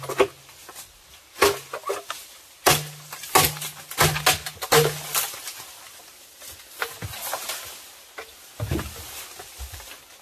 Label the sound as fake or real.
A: real